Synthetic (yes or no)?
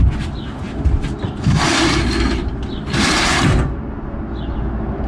no